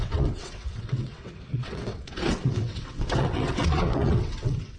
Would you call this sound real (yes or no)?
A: no